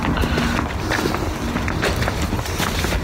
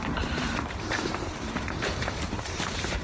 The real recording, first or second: first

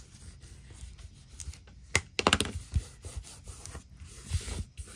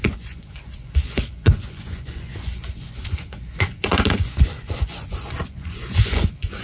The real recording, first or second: first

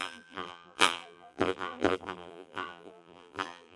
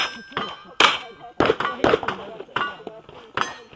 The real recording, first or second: second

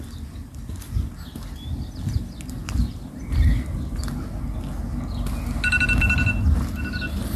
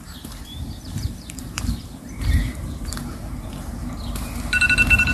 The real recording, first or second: first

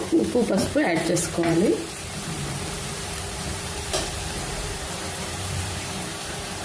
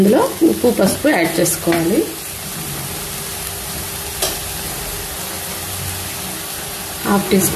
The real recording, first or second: second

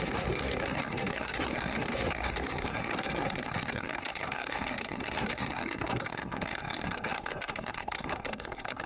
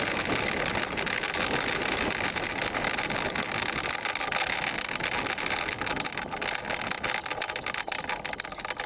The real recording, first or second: second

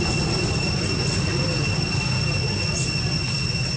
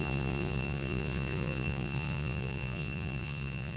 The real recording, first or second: first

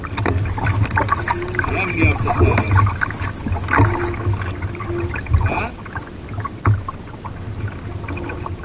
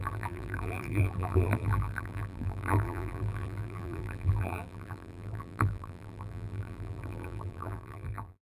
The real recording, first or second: first